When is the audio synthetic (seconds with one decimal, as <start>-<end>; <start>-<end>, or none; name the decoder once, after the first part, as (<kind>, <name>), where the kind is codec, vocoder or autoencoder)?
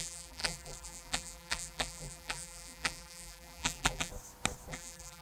0.0-4.1 (vocoder, BigVGAN v2); 4.7-5.2